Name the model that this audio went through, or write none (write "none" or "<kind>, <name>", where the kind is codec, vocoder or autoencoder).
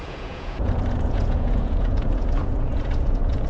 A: vocoder, Vocos